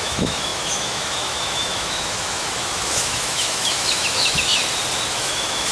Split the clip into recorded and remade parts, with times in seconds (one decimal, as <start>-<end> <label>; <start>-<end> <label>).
0.0-4.6 remade; 4.6-5.1 recorded; 5.1-5.7 remade